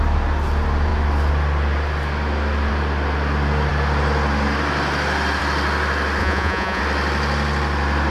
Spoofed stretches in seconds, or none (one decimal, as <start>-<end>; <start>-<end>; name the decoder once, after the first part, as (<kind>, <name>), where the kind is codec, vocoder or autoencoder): 6.2-6.8 (vocoder, Vocos)